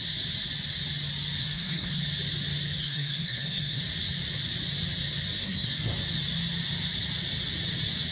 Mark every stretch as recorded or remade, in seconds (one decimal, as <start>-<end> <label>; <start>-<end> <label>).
0.0-1.4 recorded; 1.4-2.0 remade; 2.0-2.8 recorded; 2.8-3.8 remade; 3.8-5.4 recorded; 5.4-5.9 remade; 5.9-8.1 recorded